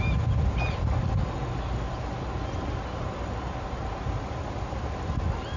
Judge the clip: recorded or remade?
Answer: recorded